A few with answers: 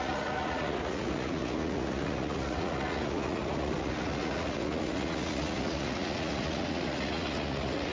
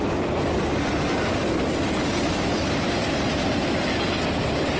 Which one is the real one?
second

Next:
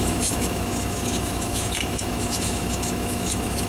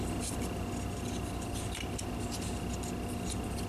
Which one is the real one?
second